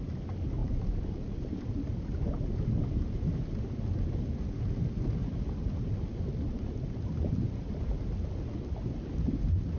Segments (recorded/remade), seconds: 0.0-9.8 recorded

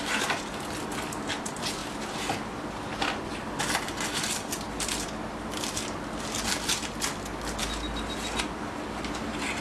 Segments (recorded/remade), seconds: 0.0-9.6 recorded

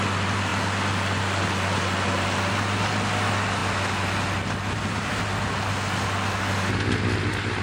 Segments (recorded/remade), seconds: 0.0-7.6 recorded